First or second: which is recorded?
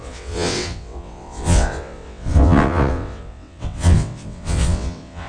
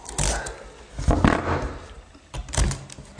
second